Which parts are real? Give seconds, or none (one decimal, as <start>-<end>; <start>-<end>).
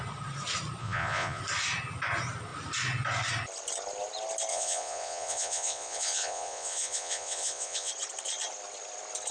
0.0-0.8; 1.4-4.5; 7.9-9.3